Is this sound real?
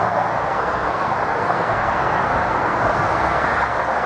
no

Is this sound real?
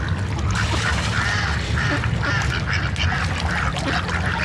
yes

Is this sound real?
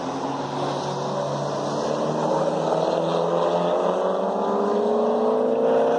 yes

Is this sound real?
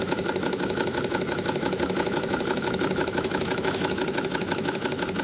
no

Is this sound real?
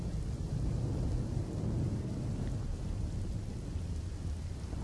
yes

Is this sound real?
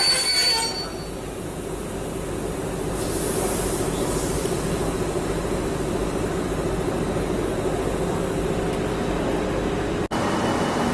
yes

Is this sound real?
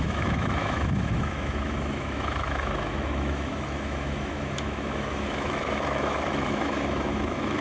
no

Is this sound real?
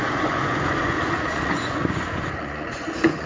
no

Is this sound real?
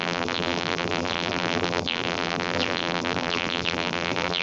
no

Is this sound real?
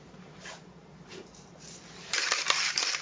no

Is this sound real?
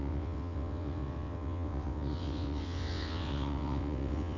no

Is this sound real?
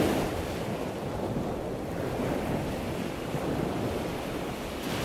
yes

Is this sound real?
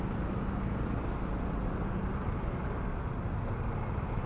yes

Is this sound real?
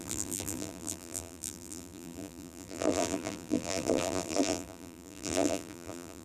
no